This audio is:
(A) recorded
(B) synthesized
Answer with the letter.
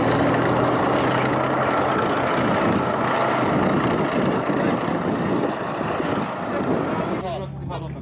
A